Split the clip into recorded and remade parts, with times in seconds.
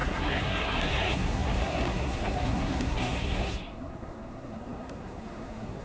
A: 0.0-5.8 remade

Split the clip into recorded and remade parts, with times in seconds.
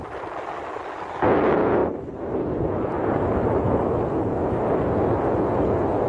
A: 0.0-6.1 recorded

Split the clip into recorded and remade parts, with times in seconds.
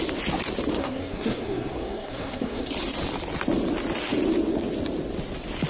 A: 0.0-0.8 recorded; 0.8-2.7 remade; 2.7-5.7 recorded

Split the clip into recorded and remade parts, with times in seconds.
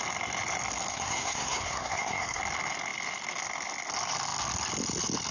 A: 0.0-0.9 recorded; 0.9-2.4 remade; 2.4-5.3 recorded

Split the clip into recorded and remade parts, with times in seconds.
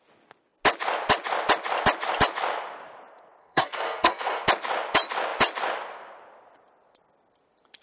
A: 0.0-3.4 recorded; 3.4-4.4 remade; 4.4-7.8 recorded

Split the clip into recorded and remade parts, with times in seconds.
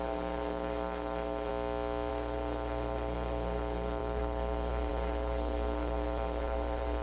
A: 0.0-1.5 remade; 1.5-2.1 recorded; 2.1-7.0 remade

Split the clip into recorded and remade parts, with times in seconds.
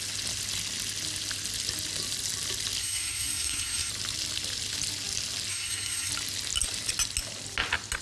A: 0.0-2.8 recorded; 2.8-3.9 remade; 3.9-5.5 recorded; 5.5-6.1 remade; 6.1-8.0 recorded